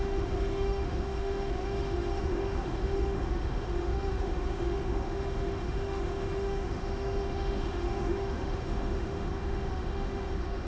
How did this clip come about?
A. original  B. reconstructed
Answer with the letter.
B